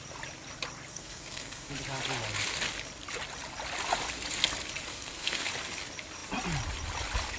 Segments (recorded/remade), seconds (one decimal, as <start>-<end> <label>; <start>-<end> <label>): 0.0-0.9 recorded; 0.9-1.7 remade; 1.7-4.9 recorded; 4.9-5.5 remade; 5.5-7.4 recorded

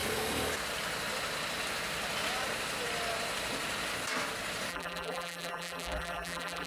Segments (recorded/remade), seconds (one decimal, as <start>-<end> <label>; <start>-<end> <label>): 0.0-4.7 recorded; 4.7-6.7 remade

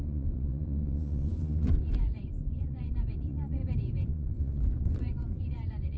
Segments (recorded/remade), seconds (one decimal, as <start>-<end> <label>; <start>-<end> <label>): 0.0-3.6 remade; 3.6-4.1 recorded; 4.1-6.0 remade

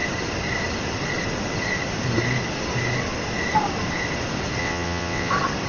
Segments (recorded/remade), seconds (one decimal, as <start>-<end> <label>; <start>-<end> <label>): 0.0-4.6 recorded; 4.6-5.3 remade; 5.3-5.7 recorded

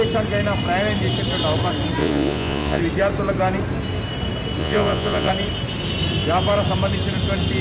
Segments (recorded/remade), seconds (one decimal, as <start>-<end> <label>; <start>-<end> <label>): 0.0-2.0 recorded; 2.0-2.8 remade; 2.8-4.6 recorded; 4.6-5.3 remade; 5.3-7.6 recorded

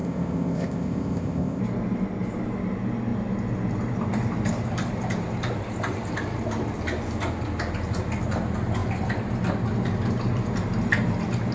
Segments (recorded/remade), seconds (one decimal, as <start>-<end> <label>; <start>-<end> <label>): 0.0-1.6 remade; 1.6-11.5 recorded

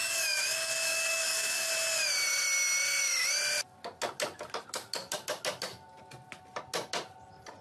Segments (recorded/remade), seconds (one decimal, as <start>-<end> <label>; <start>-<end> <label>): 0.0-1.7 remade; 1.7-7.6 recorded

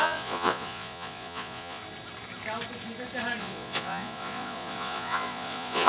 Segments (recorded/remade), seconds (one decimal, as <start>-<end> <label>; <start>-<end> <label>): 0.0-1.8 remade; 1.8-3.4 recorded; 3.4-5.9 remade